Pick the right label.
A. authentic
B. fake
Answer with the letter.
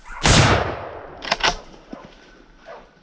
A